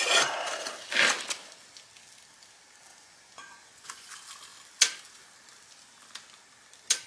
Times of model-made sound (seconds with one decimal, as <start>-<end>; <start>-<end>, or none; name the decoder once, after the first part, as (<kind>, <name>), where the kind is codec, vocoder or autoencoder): 2.9-4.1 (vocoder, Vocos)